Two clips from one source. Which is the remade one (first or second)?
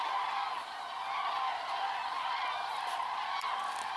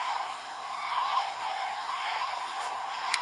second